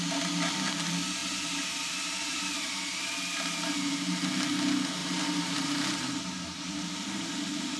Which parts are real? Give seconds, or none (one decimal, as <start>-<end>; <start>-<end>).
0.0-1.2; 3.0-5.0; 7.3-7.8